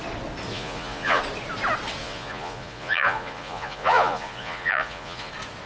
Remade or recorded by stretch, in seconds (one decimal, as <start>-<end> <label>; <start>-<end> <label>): 0.0-0.5 recorded; 0.5-1.2 remade; 1.2-2.0 recorded; 2.0-5.3 remade; 5.3-5.7 recorded

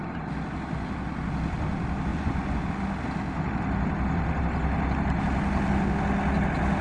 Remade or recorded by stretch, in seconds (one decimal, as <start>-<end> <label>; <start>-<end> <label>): 0.0-2.1 recorded; 2.1-2.6 remade; 2.6-6.8 recorded

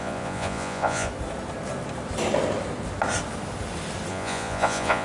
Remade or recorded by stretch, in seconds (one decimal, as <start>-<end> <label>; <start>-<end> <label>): 0.0-1.1 remade; 1.1-4.1 recorded; 4.1-5.0 remade